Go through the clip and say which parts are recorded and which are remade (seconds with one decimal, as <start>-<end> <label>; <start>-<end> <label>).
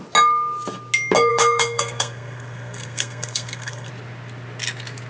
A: 0.0-1.3 recorded; 1.3-3.9 remade; 3.9-5.1 recorded